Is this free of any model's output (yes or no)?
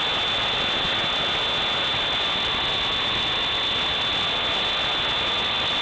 yes